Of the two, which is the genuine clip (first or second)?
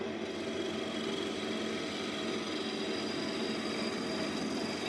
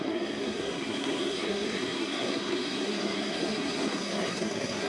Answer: first